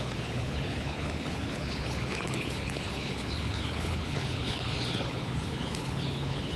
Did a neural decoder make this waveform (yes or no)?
yes